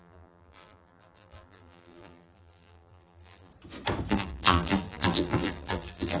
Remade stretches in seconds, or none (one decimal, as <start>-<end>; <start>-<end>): 0.0-3.5; 4.1-6.2